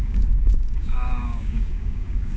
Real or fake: fake